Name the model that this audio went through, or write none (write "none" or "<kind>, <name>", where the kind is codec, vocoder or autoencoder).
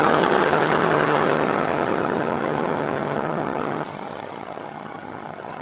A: vocoder, HiFi-GAN